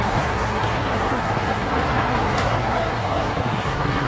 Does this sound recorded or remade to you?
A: remade